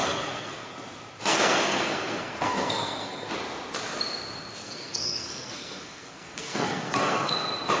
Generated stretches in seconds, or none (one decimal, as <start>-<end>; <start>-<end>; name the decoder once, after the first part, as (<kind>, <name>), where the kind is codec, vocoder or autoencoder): 0.0-0.7 (codec, SNAC); 1.2-3.3; 4.6-7.3